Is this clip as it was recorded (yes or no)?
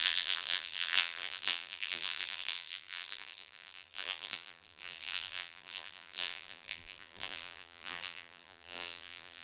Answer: no